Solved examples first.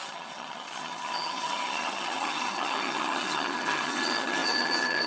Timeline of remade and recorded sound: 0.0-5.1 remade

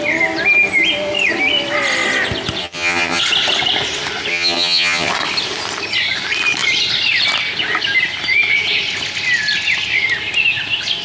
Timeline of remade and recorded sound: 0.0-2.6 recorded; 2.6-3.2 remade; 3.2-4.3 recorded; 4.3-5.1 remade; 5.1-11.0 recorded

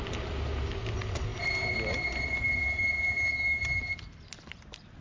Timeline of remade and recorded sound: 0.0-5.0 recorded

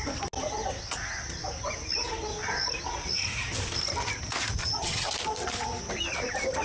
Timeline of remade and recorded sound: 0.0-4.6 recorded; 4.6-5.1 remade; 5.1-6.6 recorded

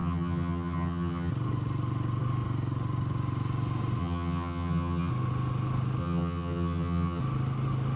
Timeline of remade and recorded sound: 0.0-1.3 remade; 1.3-4.0 recorded; 4.0-5.1 remade; 5.1-6.0 recorded; 6.0-7.2 remade; 7.2-8.0 recorded

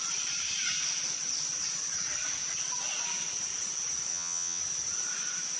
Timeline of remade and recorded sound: 0.0-4.1 recorded; 4.1-4.6 remade; 4.6-5.6 recorded

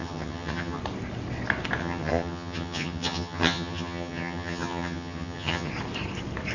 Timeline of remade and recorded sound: 0.0-0.8 remade; 0.8-1.8 recorded; 1.8-5.7 remade; 5.7-6.5 recorded